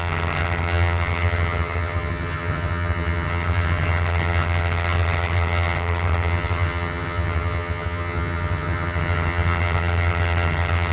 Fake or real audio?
fake